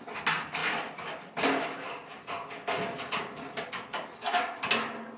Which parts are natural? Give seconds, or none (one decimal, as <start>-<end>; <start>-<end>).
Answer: 0.0-5.2